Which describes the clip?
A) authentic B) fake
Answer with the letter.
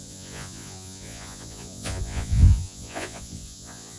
B